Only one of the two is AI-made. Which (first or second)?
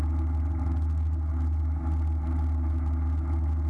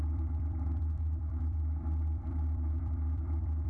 second